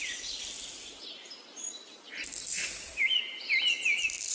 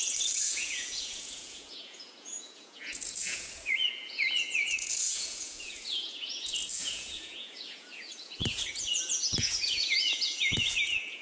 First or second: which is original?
first